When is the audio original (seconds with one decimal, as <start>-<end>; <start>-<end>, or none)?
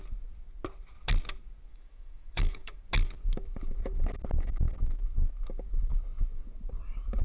0.0-1.7; 2.8-7.2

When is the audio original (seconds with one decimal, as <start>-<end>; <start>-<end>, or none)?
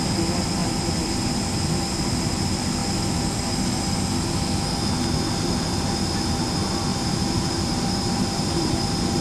0.0-6.9